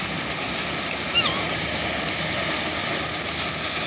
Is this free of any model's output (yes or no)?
yes